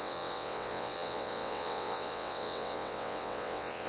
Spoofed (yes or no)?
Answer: yes